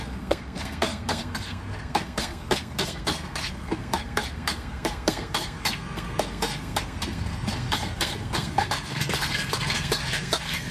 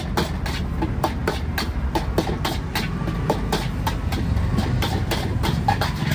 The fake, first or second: first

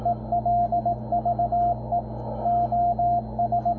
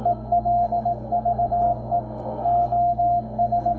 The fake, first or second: second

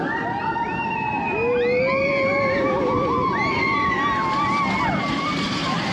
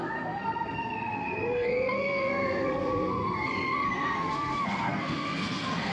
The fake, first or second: second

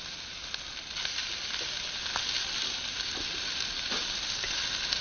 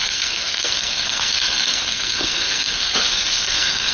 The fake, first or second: second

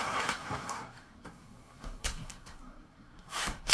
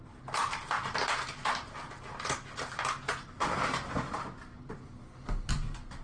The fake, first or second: first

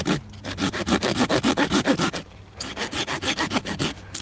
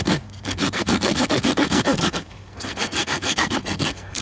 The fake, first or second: second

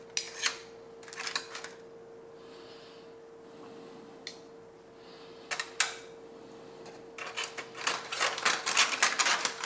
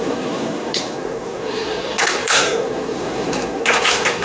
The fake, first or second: second